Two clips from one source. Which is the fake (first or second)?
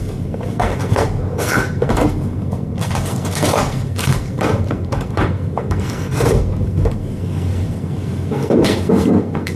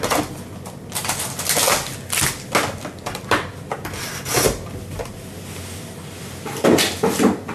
first